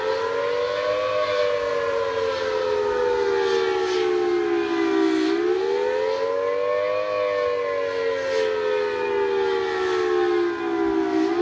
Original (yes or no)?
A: yes